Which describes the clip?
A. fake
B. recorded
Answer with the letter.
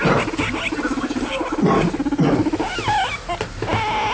B